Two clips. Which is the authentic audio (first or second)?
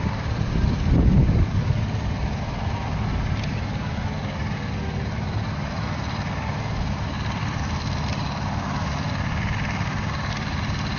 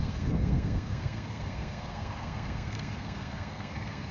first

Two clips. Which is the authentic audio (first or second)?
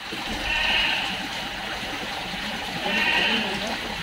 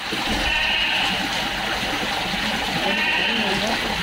second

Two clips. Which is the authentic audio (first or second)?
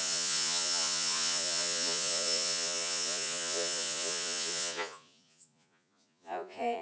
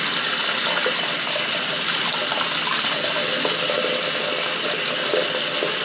second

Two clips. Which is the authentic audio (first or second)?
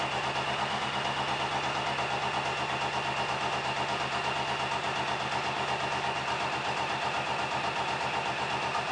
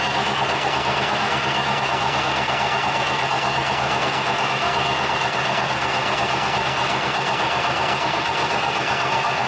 first